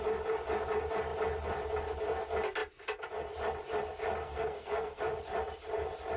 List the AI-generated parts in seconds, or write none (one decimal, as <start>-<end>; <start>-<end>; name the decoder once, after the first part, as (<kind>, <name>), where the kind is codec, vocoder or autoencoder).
4.2-5.0 (codec, SNAC)